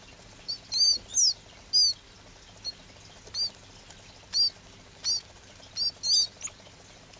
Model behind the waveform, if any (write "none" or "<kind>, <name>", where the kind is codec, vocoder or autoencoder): none